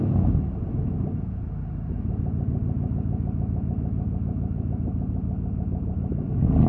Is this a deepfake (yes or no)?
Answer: no